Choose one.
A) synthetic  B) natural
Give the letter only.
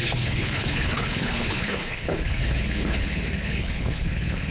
A